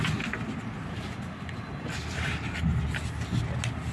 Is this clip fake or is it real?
real